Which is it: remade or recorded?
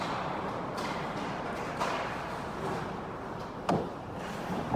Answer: recorded